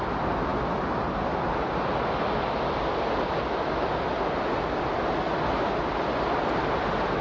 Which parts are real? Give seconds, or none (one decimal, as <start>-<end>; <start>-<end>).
0.0-7.2